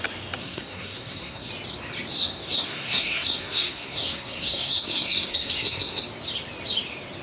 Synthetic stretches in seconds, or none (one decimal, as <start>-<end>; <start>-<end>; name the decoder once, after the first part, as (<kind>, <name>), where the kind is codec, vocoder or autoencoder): 0.4-1.5 (codec, SNAC); 2.1-6.0